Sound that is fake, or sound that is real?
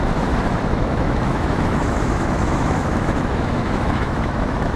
fake